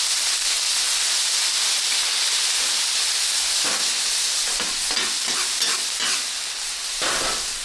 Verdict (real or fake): real